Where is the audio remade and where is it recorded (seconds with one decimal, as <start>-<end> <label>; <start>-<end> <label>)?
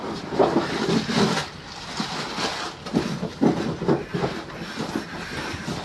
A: 0.0-5.8 recorded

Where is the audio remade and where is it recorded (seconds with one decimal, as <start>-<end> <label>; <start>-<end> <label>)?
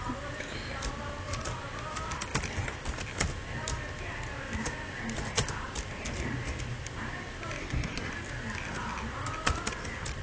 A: 0.0-7.6 recorded; 7.6-8.1 remade; 8.1-10.2 recorded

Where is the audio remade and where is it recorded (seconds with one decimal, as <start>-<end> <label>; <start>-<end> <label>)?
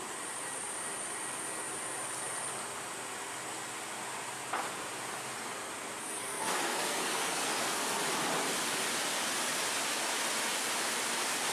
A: 0.0-6.0 recorded; 6.0-8.0 remade; 8.0-11.5 recorded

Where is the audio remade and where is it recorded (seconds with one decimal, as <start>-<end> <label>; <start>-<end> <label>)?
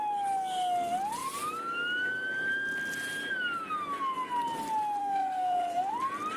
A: 0.0-5.0 recorded; 5.0-5.9 remade; 5.9-6.4 recorded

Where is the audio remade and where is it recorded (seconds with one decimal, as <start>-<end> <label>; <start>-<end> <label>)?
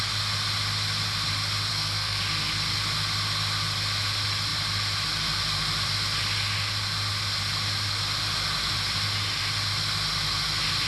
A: 0.0-1.7 recorded; 1.7-2.2 remade; 2.2-10.9 recorded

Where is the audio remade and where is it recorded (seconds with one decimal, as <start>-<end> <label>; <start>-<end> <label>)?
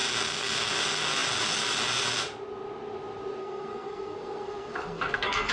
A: 0.0-3.4 recorded; 3.4-5.5 remade